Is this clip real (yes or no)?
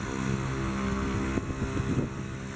yes